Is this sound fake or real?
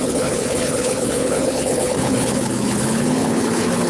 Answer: fake